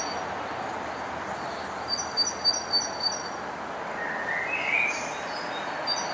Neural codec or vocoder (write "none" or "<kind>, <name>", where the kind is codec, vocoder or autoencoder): none